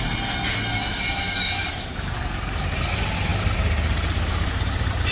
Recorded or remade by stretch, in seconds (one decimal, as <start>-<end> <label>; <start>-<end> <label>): 0.0-0.7 recorded; 0.7-1.9 remade; 1.9-5.1 recorded